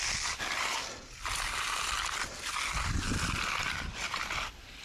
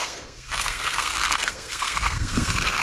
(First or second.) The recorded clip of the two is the first